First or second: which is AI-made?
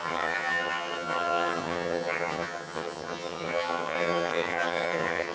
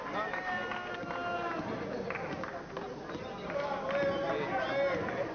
first